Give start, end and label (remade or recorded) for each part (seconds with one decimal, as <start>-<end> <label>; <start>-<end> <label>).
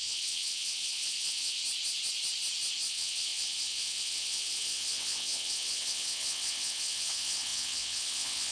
0.0-1.6 remade; 1.6-2.9 recorded; 2.9-8.5 remade